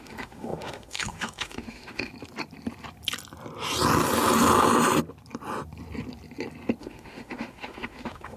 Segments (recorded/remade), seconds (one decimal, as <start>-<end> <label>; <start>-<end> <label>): 0.0-2.1 remade; 2.1-6.8 recorded; 6.8-8.4 remade